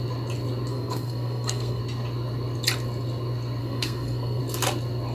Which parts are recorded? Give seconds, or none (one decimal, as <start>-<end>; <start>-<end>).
0.0-0.7; 1.8-3.6; 4.4-5.1